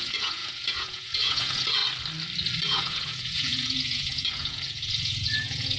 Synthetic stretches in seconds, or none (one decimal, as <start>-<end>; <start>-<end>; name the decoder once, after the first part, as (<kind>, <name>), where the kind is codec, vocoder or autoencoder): 0.0-1.8 (vocoder, Vocos); 2.6-5.8